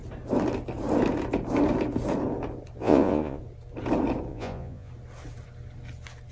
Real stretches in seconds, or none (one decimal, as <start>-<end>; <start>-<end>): 0.0-2.8; 3.4-4.3; 4.9-6.3

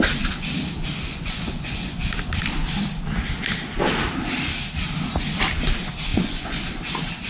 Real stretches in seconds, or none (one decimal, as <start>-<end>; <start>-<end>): 0.0-1.1; 2.1-6.1; 6.6-7.3

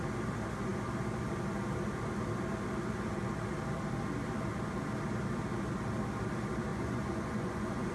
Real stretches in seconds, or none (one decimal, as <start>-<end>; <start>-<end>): 0.0-6.7

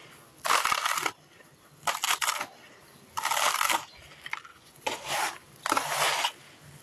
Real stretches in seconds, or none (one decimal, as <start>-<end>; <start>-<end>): 0.0-4.5; 5.1-6.8

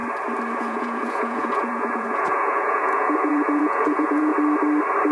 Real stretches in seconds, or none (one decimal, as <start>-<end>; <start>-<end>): 0.0-0.6; 4.3-5.1

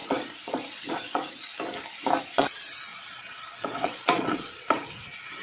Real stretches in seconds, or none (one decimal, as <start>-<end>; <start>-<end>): 1.5-2.2

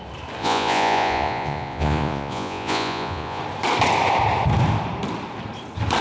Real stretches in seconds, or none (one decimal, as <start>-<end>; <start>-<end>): 0.0-0.4; 3.4-6.0